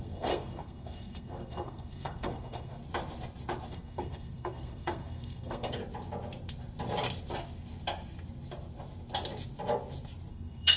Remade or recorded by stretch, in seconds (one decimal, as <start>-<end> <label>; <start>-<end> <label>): 0.0-2.8 remade; 2.8-3.7 recorded; 3.7-5.8 remade; 5.8-10.3 recorded; 10.3-10.8 remade